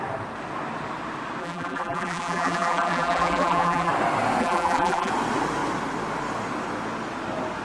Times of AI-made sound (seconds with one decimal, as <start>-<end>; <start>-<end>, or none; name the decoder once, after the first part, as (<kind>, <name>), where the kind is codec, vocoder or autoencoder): 1.4-3.9 (vocoder, BigVGAN v2); 4.4-5.1